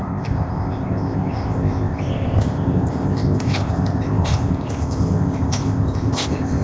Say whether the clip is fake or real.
fake